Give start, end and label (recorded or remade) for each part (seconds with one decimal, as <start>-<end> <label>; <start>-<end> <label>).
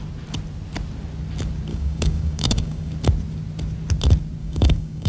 0.0-1.7 recorded; 1.7-2.9 remade; 2.9-4.4 recorded; 4.4-5.1 remade